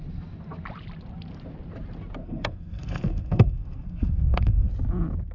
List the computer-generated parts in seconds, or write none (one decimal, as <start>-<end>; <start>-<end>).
2.2-4.7